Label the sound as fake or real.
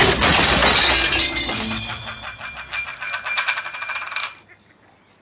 real